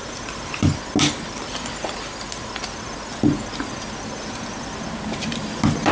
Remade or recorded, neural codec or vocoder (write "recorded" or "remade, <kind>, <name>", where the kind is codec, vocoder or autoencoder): recorded